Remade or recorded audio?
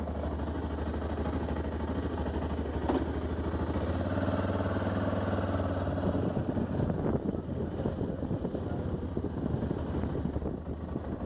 recorded